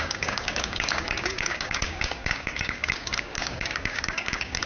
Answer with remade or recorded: remade